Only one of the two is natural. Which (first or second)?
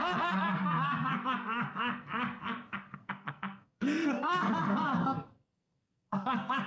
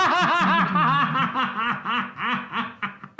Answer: second